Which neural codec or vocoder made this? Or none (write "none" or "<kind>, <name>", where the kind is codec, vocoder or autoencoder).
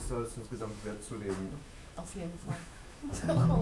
autoencoder, DAC-VAE